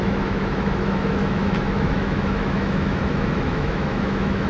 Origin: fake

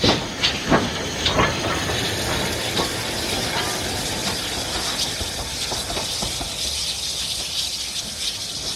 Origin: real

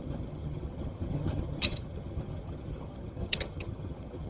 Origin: fake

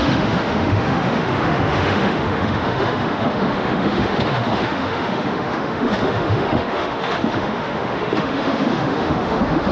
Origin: fake